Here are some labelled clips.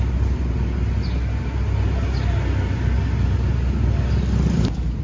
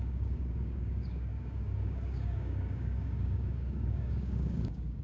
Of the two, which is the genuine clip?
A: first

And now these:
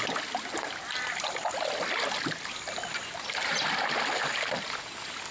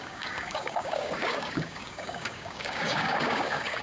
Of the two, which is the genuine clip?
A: first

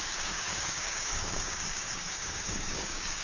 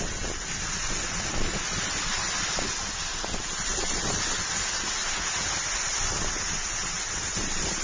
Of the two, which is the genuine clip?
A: second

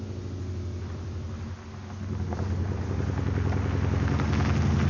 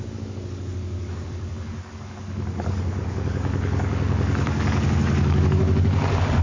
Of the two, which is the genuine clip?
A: first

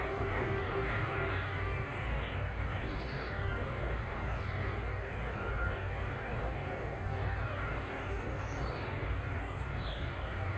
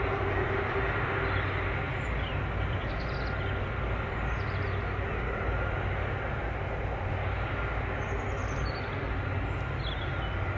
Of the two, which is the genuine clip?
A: second